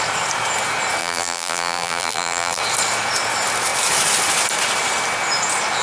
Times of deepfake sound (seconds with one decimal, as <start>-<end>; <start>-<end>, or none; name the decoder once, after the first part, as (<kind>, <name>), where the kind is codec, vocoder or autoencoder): 1.0-2.6 (vocoder, BigVGAN v2)